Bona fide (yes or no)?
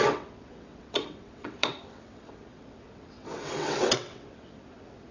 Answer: no